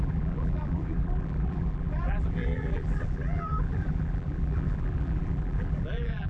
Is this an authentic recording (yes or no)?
no